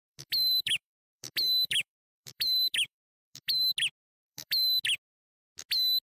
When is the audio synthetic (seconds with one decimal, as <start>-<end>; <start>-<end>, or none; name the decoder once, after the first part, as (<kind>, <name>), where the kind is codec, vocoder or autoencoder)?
0.0-3.6 (autoencoder, DAC-VAE); 4.2-4.8